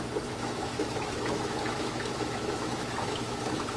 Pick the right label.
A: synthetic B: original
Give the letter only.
A